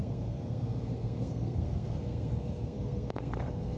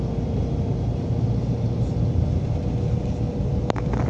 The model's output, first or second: first